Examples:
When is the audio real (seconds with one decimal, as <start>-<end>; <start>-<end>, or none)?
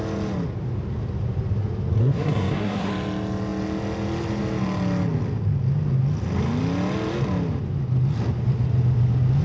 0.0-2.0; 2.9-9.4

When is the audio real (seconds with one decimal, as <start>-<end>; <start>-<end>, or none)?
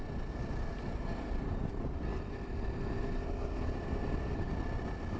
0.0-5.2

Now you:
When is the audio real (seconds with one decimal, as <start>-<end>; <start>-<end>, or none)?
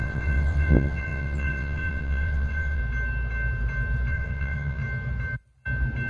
2.8-4.1; 4.8-6.1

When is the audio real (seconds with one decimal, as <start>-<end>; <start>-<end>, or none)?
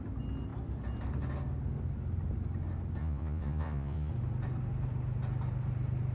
0.0-3.0; 4.1-6.1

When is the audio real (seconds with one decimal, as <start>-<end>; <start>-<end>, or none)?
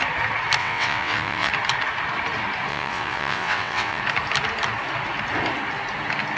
0.0-0.6; 1.5-2.7; 4.0-6.4